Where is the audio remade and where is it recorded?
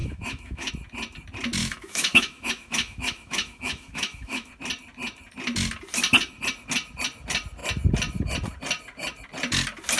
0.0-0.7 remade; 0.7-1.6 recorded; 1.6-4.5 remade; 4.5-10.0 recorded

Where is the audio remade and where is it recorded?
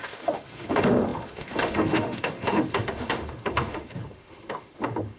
0.0-5.2 remade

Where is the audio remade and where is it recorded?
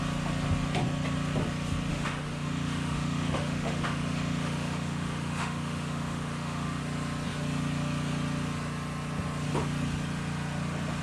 0.0-1.9 recorded; 1.9-6.8 remade; 6.8-11.0 recorded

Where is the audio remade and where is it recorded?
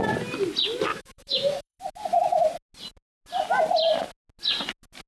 0.0-0.9 recorded; 0.9-1.8 remade; 1.8-5.1 recorded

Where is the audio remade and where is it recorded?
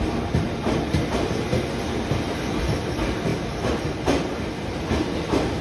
0.0-5.6 recorded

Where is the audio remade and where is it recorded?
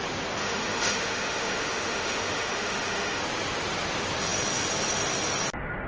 0.0-0.4 recorded; 0.4-3.2 remade; 3.2-5.9 recorded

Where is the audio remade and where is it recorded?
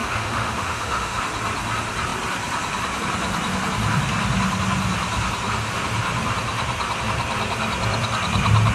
0.0-1.2 remade; 1.2-8.7 recorded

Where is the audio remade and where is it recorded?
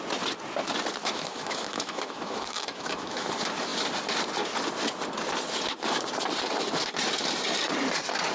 0.0-1.0 recorded; 1.0-3.3 remade; 3.3-8.3 recorded